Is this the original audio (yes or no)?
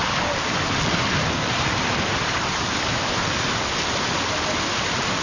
yes